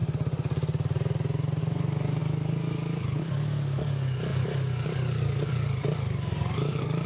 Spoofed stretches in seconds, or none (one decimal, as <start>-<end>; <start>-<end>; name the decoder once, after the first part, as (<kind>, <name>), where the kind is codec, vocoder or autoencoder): 1.6-7.1 (codec, DAC)